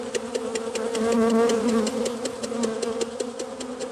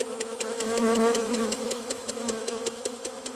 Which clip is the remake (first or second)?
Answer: second